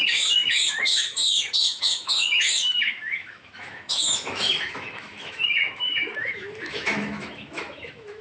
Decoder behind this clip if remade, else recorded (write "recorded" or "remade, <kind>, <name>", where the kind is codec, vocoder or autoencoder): remade, autoencoder, DAC-VAE